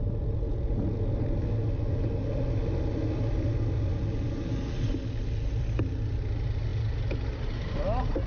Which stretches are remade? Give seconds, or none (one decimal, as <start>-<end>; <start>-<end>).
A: none